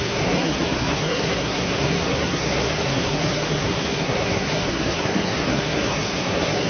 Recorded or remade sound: remade